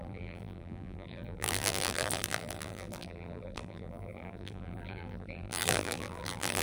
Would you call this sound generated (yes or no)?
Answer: yes